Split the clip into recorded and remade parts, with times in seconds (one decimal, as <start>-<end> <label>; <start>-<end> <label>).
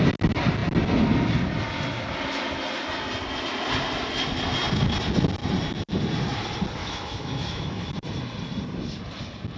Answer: 0.0-6.8 recorded; 6.8-7.9 remade; 7.9-9.6 recorded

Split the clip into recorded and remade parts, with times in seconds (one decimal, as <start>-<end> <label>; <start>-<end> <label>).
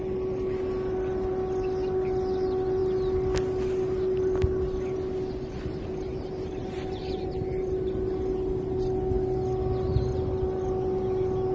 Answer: 0.0-11.5 recorded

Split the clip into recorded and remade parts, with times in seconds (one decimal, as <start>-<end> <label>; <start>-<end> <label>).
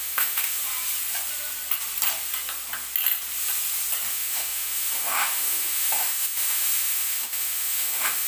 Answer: 0.0-0.6 remade; 0.6-4.1 recorded; 4.1-8.3 remade